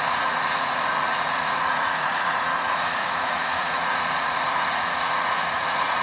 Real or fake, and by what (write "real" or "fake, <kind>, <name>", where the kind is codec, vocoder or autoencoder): fake, vocoder, Vocos